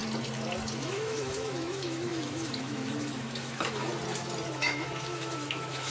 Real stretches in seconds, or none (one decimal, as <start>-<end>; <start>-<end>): 0.0-0.8; 3.9-4.5